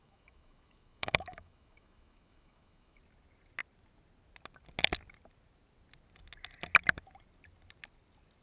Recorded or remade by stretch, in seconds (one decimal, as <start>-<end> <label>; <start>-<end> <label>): 0.0-3.0 remade; 3.0-8.4 recorded